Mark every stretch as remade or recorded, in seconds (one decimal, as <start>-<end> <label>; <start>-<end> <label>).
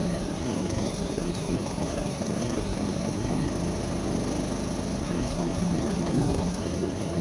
0.0-3.5 remade; 3.5-5.0 recorded; 5.0-7.2 remade